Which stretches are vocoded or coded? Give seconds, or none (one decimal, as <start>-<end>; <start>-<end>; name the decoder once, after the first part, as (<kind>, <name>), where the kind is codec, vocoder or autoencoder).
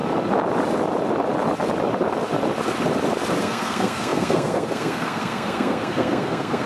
3.4-6.7 (codec, SNAC)